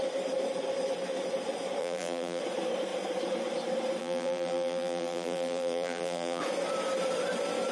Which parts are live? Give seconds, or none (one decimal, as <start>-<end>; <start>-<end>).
0.0-1.8; 2.4-4.0; 6.4-7.7